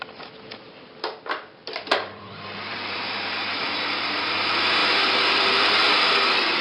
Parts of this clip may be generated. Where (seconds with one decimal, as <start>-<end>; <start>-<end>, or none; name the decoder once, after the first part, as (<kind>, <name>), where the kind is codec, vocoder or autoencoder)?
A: 1.6-4.2 (vocoder, BigVGAN v2); 4.8-6.6

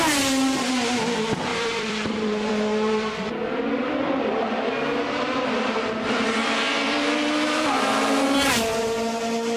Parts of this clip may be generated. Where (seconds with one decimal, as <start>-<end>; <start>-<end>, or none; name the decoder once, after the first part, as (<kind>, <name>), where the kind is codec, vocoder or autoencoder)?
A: 1.5-2.5 (vocoder, BigVGAN v2); 6.4-7.6